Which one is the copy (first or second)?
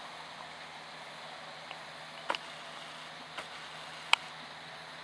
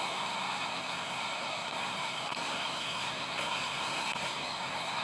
second